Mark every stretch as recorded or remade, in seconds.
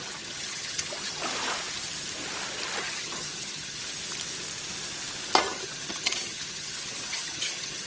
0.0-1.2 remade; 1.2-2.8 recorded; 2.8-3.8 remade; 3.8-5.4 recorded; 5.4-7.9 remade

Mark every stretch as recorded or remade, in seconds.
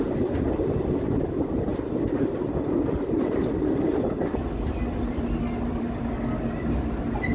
0.0-7.3 recorded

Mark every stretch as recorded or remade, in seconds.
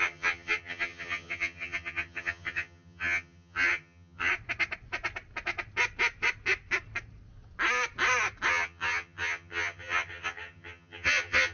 0.0-4.3 remade; 4.3-8.5 recorded; 8.5-11.5 remade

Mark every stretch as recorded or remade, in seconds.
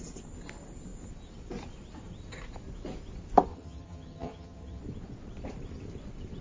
0.0-3.5 recorded; 3.5-4.8 remade; 4.8-6.4 recorded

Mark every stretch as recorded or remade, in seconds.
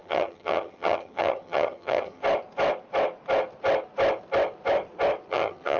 0.0-2.2 remade; 2.2-5.3 recorded; 5.3-5.8 remade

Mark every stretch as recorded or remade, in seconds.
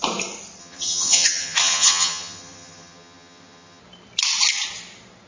0.0-0.6 recorded; 0.6-3.8 remade; 3.8-5.3 recorded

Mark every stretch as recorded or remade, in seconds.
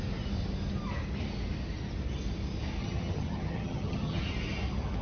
0.0-2.8 recorded; 2.8-4.2 remade; 4.2-5.0 recorded